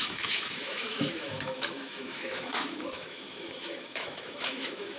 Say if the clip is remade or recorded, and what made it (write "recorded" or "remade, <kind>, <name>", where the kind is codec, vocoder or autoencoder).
remade, autoencoder, DAC-VAE